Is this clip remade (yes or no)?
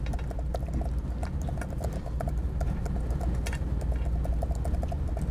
no